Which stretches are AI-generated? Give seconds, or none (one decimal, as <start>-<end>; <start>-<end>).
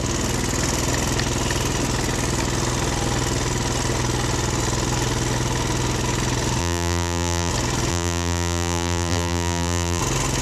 6.6-7.5; 7.9-10.0